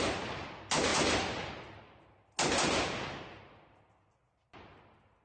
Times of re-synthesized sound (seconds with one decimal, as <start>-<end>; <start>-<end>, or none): none